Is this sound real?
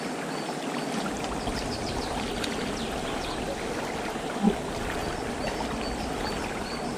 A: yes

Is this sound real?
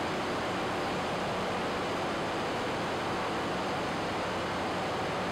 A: yes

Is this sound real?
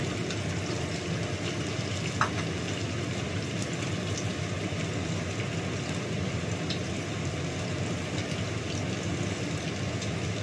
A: yes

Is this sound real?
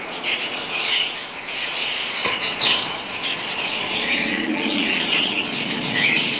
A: no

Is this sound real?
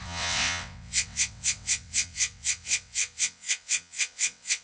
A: no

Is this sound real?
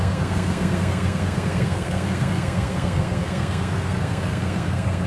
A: no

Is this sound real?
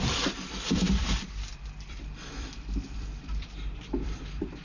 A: no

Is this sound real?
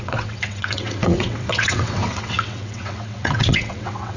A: no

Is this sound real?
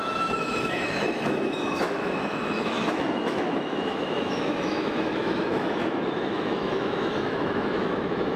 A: no